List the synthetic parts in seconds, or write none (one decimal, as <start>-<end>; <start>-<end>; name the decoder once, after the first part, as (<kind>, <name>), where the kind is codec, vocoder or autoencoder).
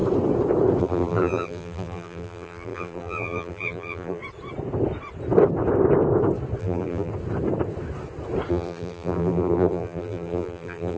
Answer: 0.8-4.2 (vocoder, BigVGAN v2); 6.6-7.1; 8.5-11.0